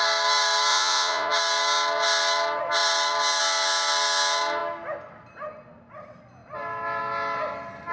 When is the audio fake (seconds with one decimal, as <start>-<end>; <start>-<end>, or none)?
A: 0.7-1.3